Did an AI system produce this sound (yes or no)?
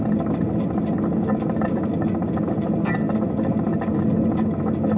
no